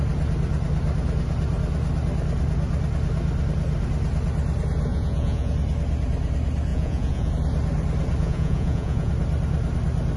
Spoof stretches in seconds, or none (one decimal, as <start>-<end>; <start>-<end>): 4.9-5.5; 6.7-7.3; 8.2-9.1